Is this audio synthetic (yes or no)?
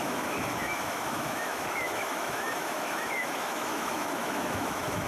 yes